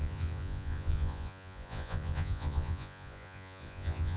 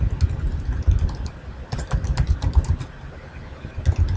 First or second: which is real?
second